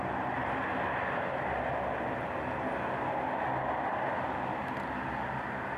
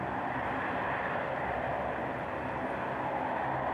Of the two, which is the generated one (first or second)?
second